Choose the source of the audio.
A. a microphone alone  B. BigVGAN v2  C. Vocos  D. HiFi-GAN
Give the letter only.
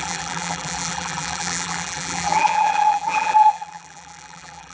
B